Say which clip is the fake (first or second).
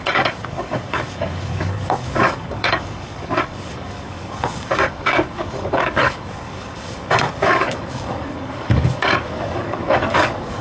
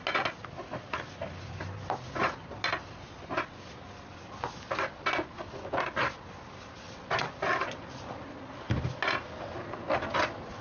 first